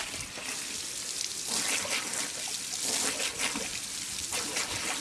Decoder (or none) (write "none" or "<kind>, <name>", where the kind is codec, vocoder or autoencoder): none